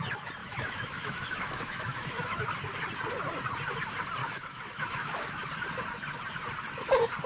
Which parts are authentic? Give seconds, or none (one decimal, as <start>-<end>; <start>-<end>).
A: 0.0-0.4; 2.5-4.2; 5.4-7.3